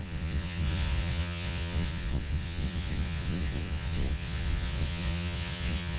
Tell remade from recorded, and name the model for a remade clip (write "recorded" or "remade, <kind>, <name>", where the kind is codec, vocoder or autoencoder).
remade, vocoder, Vocos